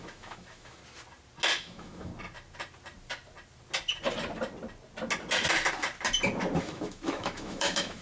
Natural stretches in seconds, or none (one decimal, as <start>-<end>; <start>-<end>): 0.8-1.6; 2.1-6.6